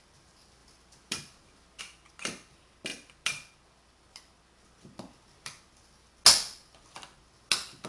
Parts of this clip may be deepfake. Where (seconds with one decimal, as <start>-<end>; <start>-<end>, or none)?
none